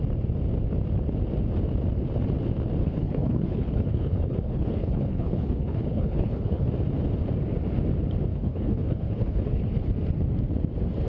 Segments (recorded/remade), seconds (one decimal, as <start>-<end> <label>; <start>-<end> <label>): 0.0-2.8 recorded; 2.8-6.7 remade; 6.7-8.3 recorded; 8.3-9.9 remade; 9.9-11.1 recorded